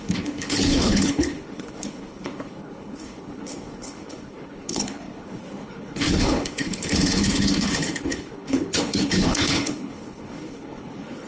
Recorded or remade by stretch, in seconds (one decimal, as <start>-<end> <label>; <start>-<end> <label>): 0.0-11.3 remade